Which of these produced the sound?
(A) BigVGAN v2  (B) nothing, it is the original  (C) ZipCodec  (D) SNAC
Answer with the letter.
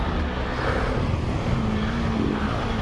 B